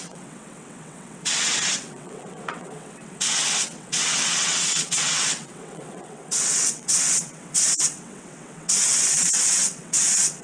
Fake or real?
fake